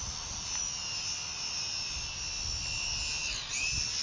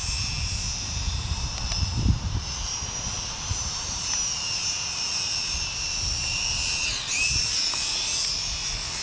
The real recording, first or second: first